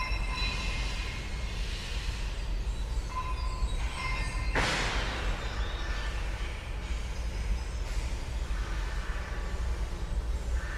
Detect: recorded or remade recorded